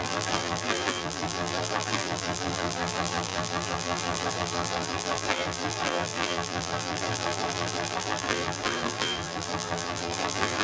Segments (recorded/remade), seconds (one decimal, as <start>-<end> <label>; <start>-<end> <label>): 0.0-10.6 remade